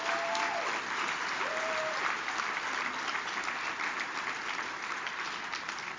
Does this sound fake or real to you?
real